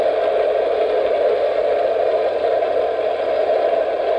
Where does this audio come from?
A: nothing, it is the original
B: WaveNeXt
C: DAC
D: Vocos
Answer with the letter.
A